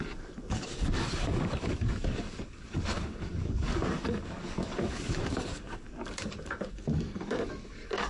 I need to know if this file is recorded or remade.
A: remade